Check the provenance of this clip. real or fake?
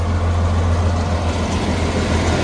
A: real